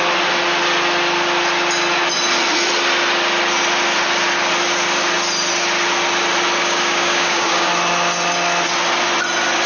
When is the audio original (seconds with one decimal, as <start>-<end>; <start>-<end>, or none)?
0.0-6.6; 7.7-9.7